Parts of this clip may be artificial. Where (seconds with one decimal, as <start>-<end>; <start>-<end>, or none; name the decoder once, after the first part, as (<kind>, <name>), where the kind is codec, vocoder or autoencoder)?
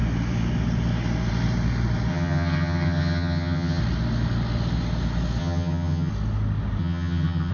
2.1-3.8 (vocoder, HiFi-GAN); 5.4-6.1; 6.8-7.5